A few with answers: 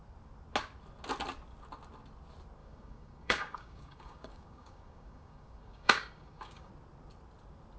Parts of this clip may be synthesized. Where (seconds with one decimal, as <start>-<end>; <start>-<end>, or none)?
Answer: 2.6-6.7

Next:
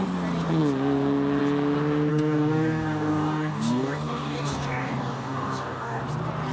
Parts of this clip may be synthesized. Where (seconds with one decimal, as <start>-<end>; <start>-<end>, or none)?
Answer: 2.1-6.0

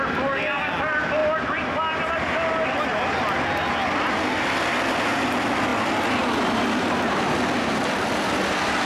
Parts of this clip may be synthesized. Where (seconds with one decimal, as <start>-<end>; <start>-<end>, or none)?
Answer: none

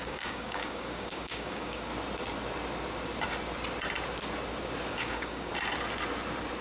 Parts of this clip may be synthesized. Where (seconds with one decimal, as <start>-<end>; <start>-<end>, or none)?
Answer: 0.0-1.9; 4.9-5.5

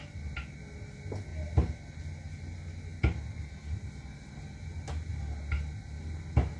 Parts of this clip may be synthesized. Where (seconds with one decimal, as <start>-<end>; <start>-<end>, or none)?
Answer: none

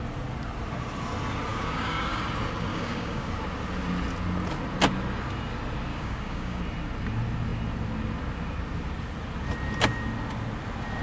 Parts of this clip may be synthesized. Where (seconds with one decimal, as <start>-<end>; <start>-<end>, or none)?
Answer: 1.5-2.2; 2.7-3.3; 5.9-6.6